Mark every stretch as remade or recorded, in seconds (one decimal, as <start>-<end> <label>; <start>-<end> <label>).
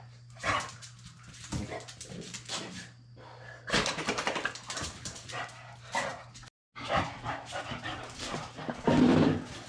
0.0-9.7 recorded